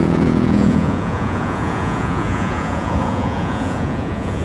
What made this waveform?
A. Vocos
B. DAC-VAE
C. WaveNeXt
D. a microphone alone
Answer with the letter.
A